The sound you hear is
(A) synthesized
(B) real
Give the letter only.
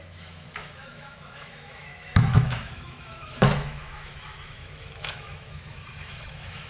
A